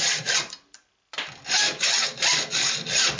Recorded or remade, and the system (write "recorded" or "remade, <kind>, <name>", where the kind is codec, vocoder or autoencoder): recorded